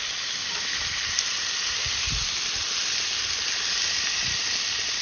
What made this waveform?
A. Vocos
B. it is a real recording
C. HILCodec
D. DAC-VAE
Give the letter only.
B